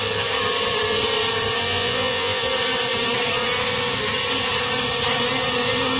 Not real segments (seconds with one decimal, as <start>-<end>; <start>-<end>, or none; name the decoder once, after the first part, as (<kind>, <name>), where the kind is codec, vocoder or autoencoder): 1.6-2.4 (vocoder, Vocos)